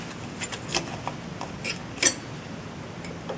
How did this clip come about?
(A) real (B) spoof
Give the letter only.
A